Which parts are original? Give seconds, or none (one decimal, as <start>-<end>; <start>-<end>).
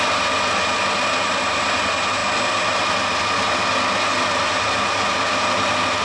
0.0-6.0